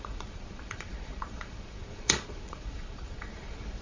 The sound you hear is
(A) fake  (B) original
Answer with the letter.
A